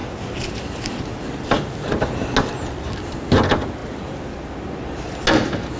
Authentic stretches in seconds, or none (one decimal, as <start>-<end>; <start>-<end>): 0.0-5.8